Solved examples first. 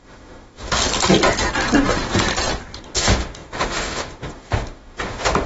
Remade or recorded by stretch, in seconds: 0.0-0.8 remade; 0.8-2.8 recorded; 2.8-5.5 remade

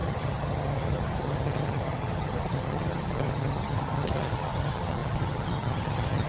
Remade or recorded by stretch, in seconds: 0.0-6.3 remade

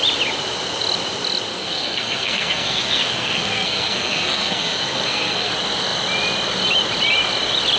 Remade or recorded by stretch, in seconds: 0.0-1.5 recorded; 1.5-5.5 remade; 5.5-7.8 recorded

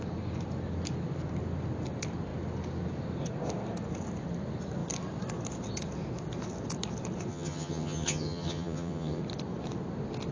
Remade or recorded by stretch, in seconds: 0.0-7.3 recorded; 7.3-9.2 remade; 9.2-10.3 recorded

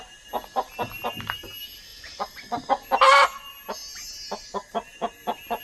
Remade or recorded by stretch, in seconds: 0.0-1.9 recorded; 1.9-2.6 remade; 2.6-5.6 recorded